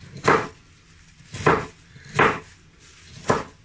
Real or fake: real